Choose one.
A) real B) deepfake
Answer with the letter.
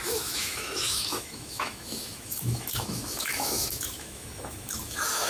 B